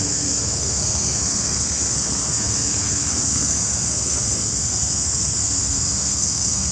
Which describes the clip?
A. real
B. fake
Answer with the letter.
B